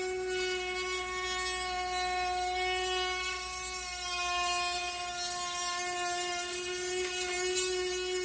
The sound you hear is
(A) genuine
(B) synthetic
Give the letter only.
A